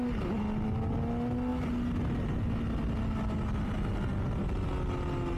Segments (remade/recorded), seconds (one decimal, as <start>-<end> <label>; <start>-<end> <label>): 0.0-5.4 recorded